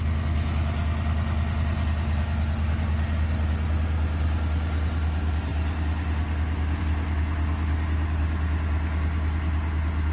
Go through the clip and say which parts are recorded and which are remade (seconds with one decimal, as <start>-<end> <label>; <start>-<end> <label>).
0.0-10.1 recorded